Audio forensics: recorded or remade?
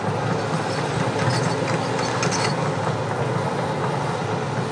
recorded